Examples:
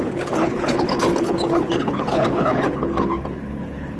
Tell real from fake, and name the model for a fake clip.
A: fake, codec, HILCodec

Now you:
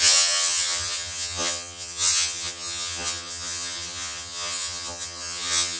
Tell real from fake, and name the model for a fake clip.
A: fake, vocoder, HiFi-GAN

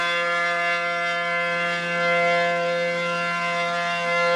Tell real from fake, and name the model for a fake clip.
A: fake, vocoder, BigVGAN v2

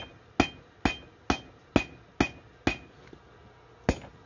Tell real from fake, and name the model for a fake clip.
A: real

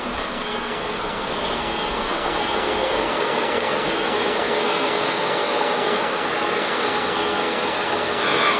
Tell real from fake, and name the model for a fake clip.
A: fake, codec, SNAC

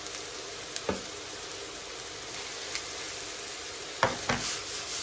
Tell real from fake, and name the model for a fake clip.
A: real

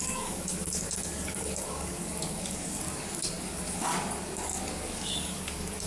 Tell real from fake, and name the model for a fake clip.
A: fake, codec, DAC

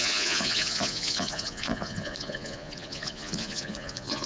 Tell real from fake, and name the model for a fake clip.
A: fake, vocoder, Vocos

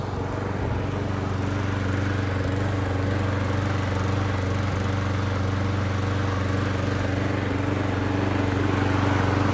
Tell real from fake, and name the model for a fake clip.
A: real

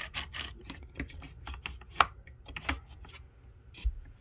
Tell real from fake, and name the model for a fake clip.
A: real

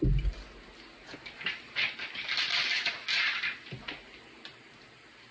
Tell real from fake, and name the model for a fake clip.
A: real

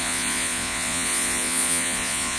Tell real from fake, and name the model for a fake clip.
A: fake, vocoder, Vocos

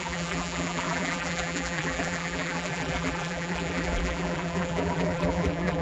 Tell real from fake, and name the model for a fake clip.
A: fake, vocoder, BigVGAN v2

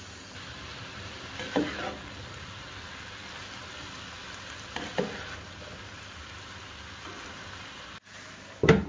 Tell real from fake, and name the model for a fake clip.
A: real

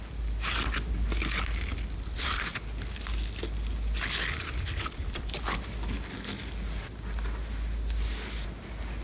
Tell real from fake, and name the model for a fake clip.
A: real